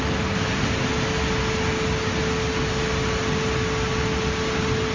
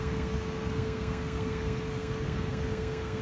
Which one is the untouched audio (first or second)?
first